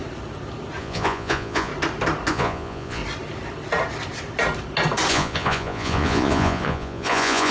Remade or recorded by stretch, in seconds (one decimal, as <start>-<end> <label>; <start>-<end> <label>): 0.0-0.8 recorded; 0.8-1.7 remade; 1.7-2.3 recorded; 2.3-3.0 remade; 3.0-5.1 recorded; 5.1-7.5 remade